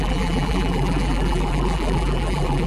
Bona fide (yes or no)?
no